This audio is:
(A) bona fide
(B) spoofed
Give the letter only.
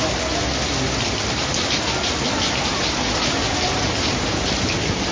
A